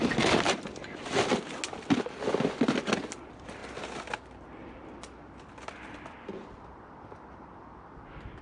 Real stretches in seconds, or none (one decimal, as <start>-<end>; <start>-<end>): 0.0-3.6; 4.8-8.4